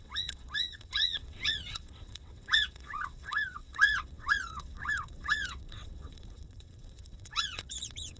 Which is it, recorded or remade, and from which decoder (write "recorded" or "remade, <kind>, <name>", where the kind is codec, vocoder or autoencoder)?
remade, vocoder, WaveNeXt